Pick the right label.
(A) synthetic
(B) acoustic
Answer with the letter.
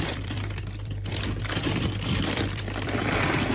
A